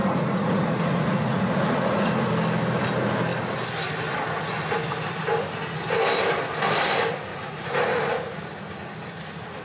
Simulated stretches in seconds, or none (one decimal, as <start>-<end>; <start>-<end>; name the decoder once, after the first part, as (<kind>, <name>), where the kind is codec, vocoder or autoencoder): 0.0-2.3 (vocoder, Vocos); 7.3-8.1